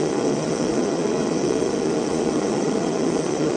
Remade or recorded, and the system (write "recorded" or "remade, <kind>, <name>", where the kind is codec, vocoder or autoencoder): remade, vocoder, Vocos